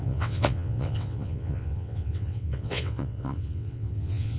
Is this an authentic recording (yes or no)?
no